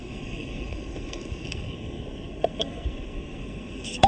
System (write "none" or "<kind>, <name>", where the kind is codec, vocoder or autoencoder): codec, SNAC